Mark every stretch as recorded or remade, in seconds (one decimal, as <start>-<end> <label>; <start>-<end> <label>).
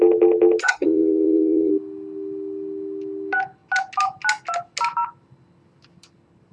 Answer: 0.0-0.6 recorded; 0.6-1.7 remade; 1.7-6.5 recorded